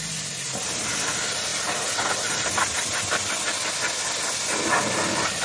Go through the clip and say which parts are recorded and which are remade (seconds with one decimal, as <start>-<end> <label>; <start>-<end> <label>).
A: 0.0-5.4 recorded